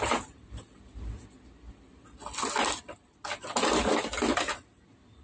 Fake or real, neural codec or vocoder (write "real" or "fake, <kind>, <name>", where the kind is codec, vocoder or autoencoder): real